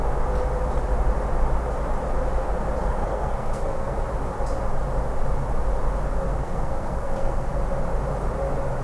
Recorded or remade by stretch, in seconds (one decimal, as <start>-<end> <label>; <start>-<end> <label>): 0.0-2.8 recorded; 2.8-4.0 remade; 4.0-6.3 recorded; 6.3-7.6 remade; 7.6-8.8 recorded